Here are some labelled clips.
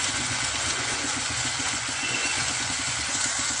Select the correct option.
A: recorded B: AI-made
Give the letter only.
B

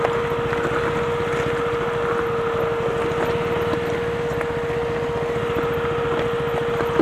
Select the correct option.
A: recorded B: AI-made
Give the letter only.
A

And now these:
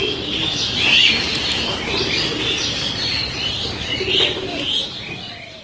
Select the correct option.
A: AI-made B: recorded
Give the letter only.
B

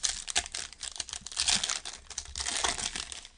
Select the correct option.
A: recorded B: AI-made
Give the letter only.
A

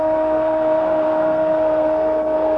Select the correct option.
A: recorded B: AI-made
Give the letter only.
B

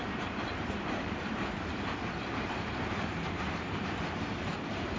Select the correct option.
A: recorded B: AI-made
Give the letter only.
B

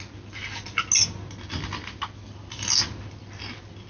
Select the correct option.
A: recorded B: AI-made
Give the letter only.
A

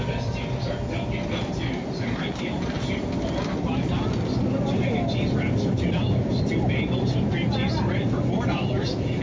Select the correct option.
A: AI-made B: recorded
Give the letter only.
B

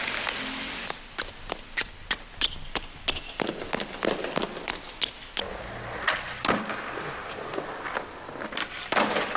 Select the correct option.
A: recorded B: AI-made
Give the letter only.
A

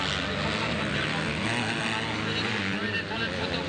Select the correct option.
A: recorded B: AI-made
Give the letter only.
A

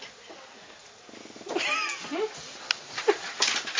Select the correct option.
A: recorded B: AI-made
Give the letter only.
A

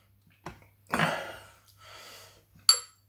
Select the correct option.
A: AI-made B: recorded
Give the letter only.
B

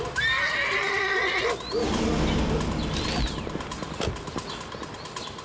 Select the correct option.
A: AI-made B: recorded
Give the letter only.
B